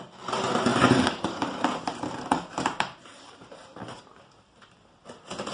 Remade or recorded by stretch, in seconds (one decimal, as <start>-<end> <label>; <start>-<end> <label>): 0.0-0.7 recorded; 0.7-4.0 remade; 4.0-5.5 recorded